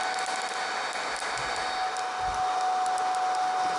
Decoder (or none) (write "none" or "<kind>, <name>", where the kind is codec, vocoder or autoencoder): none